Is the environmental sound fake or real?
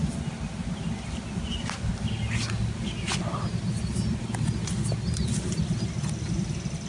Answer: real